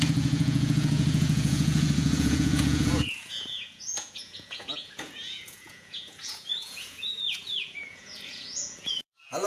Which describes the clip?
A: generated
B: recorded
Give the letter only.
A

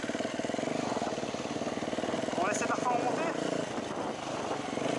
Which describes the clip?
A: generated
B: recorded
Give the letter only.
B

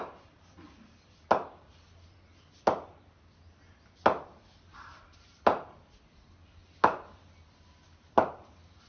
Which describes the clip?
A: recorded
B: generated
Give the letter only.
A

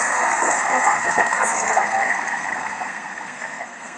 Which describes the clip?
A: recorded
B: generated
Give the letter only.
B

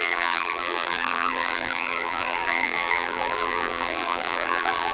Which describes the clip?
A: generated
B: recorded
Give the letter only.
A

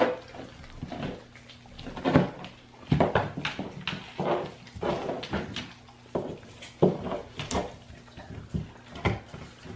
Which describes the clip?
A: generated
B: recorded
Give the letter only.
B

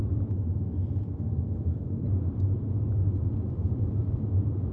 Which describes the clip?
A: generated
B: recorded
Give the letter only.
B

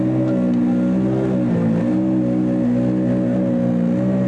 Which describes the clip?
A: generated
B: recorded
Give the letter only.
B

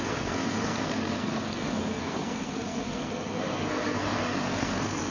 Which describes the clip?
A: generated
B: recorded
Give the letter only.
A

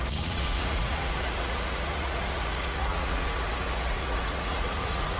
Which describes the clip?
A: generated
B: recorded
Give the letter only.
A